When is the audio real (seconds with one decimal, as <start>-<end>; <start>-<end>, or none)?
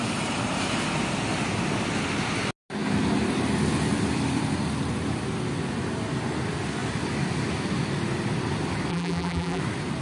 0.0-8.9; 9.6-10.0